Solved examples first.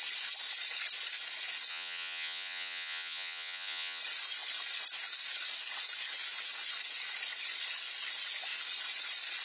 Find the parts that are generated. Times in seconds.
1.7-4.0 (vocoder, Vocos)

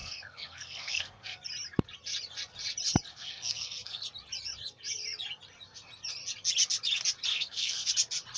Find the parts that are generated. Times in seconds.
0.0-1.4 (codec, SNAC); 3.1-4.0; 7.3-7.9

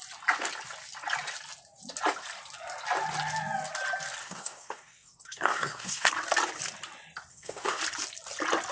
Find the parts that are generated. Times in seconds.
4.2-6.1 (codec, SNAC); 7.3-7.8

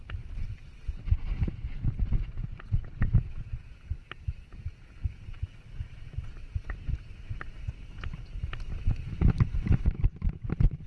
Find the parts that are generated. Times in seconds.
3.1-4.0 (vocoder, Vocos)

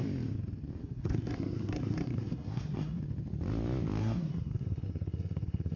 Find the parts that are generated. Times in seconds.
0.8-3.0 (codec, SNAC); 4.0-5.8

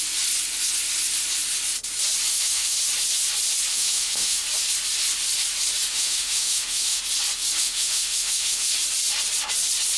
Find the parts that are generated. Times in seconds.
2.3-2.8 (autoencoder, DAC-VAE); 3.7-4.4; 5.9-7.0; 7.6-8.7